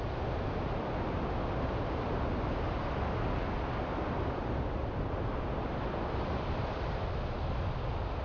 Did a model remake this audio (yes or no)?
no